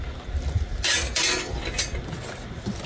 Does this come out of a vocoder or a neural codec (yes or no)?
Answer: no